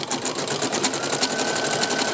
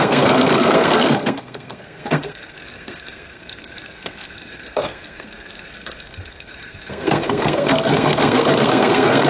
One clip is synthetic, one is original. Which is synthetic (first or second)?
second